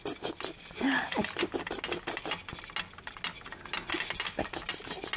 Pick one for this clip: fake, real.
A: real